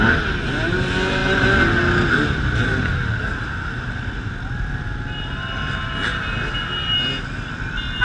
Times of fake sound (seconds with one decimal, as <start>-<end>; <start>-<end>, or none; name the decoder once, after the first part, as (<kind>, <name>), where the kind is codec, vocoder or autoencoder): none